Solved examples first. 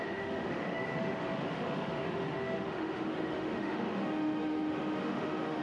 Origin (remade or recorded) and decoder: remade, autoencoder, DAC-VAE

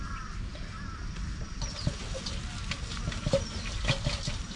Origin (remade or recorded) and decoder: recorded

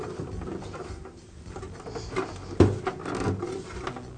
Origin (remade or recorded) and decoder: recorded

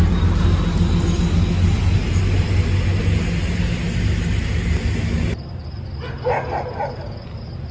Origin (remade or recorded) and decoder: recorded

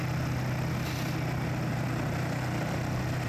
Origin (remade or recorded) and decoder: recorded